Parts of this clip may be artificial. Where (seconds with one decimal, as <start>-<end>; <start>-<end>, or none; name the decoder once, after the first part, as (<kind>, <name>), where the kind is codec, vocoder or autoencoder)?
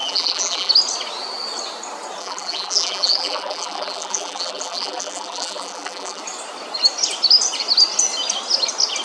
0.0-0.7 (vocoder, BigVGAN v2); 2.2-6.2